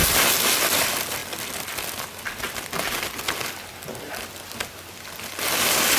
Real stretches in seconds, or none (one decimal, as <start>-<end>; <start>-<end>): 0.0-6.0

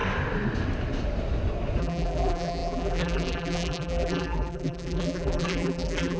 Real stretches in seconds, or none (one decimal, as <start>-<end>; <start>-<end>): 0.0-1.8

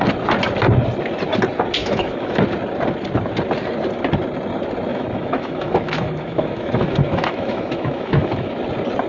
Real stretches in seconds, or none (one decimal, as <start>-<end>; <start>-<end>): 0.0-1.8; 2.4-4.9; 8.6-9.1

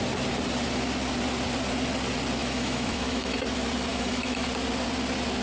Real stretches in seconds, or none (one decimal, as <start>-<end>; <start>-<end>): 0.0-2.4; 3.4-3.9; 4.5-5.4

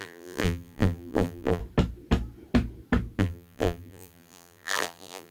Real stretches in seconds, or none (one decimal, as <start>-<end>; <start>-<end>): 1.6-3.2

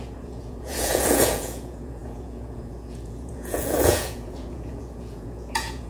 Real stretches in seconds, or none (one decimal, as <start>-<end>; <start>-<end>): none

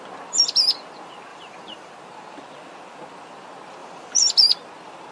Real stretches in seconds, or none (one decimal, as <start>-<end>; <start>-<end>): 0.0-1.3; 1.9-3.8; 4.3-5.1